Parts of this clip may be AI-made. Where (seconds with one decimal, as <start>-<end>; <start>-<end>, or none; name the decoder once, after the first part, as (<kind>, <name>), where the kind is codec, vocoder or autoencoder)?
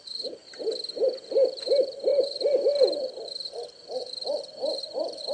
0.0-0.4 (vocoder, BigVGAN v2); 1.2-5.3